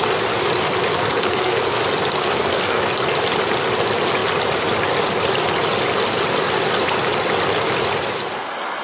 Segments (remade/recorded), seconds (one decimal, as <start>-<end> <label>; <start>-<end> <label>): 0.0-0.9 recorded; 0.9-1.8 remade; 1.8-2.2 recorded; 2.2-2.8 remade; 2.8-8.8 recorded